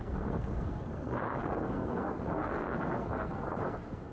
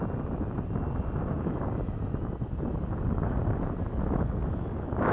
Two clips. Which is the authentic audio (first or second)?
second